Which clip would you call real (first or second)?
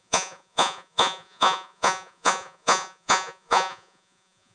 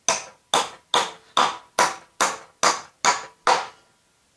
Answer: second